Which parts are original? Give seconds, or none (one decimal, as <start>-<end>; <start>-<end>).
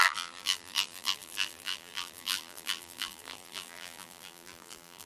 none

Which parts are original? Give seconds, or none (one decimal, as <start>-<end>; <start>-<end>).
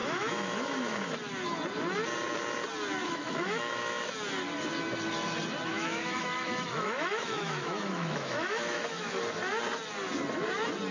1.1-3.0; 4.1-5.7; 9.2-10.9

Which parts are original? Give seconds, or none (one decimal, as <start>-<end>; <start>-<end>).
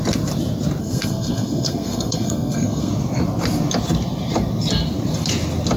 0.0-0.8; 2.9-5.8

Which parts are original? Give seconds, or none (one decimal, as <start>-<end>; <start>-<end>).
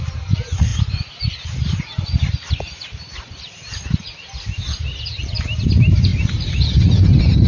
0.0-7.5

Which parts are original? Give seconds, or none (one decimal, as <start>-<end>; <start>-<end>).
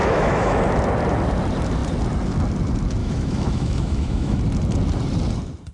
0.6-3.0; 4.4-5.7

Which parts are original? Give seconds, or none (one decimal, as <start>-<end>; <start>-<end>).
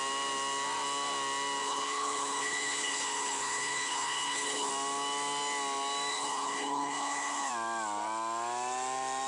0.0-1.6; 4.7-6.1; 7.5-9.3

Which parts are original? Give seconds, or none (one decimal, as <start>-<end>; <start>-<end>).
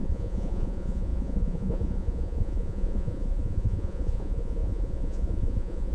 none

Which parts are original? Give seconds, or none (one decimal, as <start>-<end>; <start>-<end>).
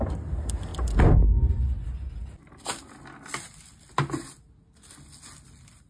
0.0-5.9